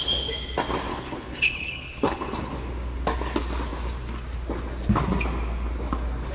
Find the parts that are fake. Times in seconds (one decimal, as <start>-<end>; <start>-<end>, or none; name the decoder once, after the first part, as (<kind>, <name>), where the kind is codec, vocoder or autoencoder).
0.9-2.5 (codec, HILCodec)